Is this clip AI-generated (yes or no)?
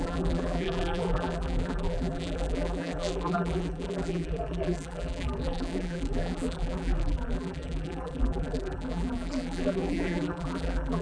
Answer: yes